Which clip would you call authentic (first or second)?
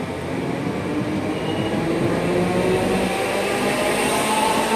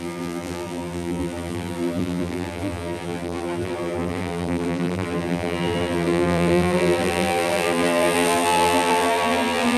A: first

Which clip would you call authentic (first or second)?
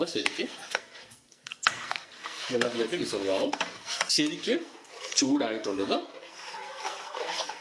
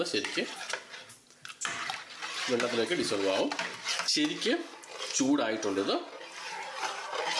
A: second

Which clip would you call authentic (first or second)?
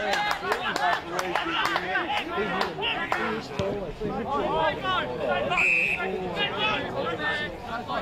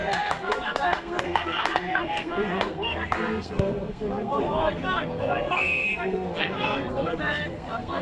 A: first